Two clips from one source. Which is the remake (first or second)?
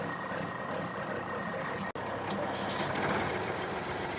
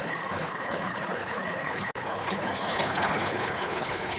second